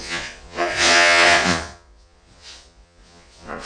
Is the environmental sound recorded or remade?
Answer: remade